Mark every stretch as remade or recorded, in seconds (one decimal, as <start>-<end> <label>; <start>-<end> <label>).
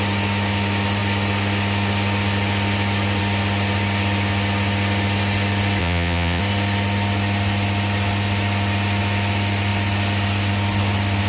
0.0-5.8 recorded; 5.8-6.4 remade; 6.4-11.3 recorded